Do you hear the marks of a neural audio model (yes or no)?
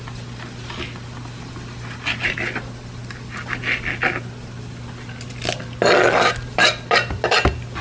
no